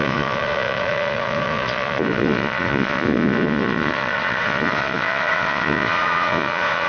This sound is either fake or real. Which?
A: fake